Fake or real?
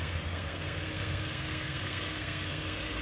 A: fake